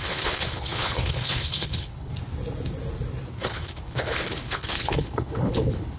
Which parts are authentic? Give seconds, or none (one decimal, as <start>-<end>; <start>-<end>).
2.1-3.3